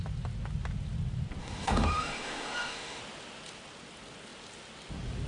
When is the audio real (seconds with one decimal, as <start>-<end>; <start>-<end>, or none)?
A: 0.0-1.4; 3.0-5.3